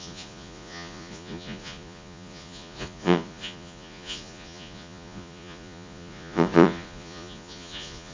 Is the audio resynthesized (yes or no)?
yes